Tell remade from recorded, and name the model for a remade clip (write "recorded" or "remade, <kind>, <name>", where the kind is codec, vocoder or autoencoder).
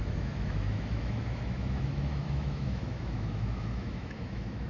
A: remade, autoencoder, DAC-VAE